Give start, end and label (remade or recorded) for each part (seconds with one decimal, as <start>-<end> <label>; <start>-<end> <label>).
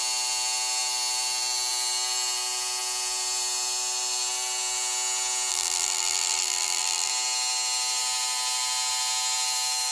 0.0-5.5 recorded; 5.5-7.1 remade; 7.1-9.9 recorded